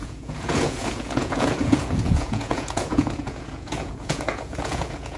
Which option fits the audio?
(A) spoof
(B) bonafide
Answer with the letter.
A